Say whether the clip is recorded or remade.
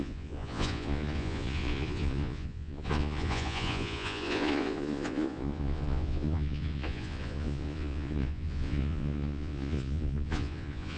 remade